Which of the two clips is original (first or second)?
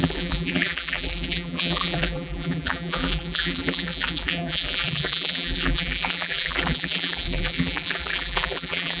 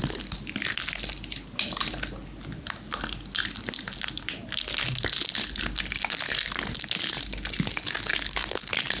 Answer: second